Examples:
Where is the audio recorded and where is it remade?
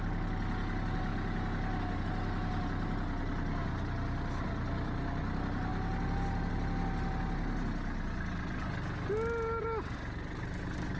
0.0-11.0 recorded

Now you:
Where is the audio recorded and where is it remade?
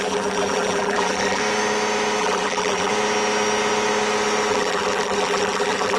0.0-1.4 remade; 1.4-2.2 recorded; 2.2-2.9 remade; 2.9-4.5 recorded; 4.5-6.0 remade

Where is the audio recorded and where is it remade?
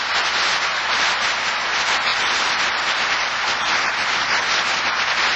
0.0-2.1 recorded; 2.1-4.2 remade; 4.2-5.4 recorded